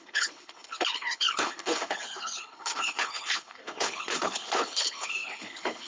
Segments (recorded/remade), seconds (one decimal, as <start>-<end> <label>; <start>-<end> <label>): 0.0-5.9 remade